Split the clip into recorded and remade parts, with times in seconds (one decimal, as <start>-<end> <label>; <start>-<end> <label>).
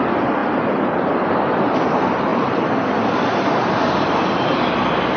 0.0-2.3 recorded; 2.3-3.8 remade; 3.8-5.2 recorded